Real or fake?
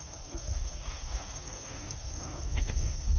fake